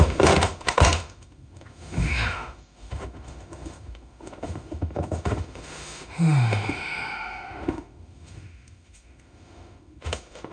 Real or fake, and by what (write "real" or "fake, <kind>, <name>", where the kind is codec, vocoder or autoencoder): fake, autoencoder, DAC-VAE